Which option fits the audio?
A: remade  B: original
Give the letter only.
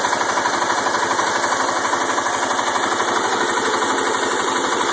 B